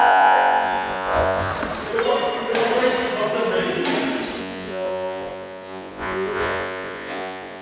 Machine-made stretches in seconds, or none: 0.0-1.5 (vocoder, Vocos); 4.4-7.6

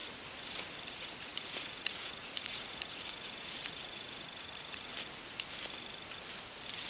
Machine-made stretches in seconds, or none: 0.9-4.9 (vocoder, Vocos)

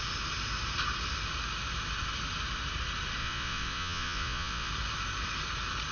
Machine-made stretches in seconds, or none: 3.2-4.7 (vocoder, Vocos)